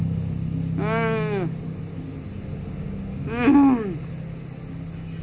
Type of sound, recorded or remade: recorded